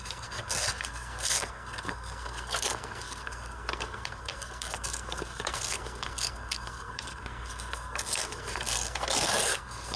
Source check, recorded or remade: remade